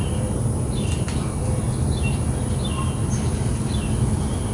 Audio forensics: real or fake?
real